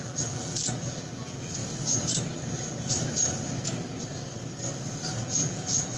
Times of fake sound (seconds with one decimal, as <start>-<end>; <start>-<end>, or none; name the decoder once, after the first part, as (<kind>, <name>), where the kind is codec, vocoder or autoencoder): 0.0-1.6 (vocoder, BigVGAN v2); 5.2-6.0